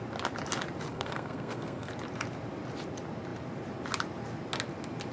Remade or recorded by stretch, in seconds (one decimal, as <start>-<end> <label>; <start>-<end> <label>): 0.0-0.9 recorded; 0.9-1.9 remade; 1.9-5.1 recorded